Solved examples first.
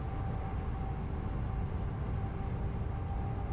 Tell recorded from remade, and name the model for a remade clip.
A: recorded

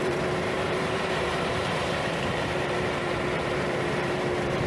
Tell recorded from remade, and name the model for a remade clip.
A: remade, vocoder, BigVGAN v2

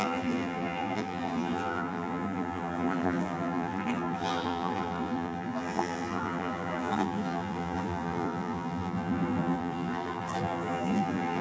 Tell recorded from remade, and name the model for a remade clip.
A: remade, vocoder, BigVGAN v2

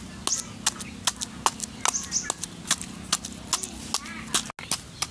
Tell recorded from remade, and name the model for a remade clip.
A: recorded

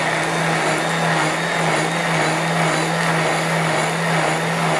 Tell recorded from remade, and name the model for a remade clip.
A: recorded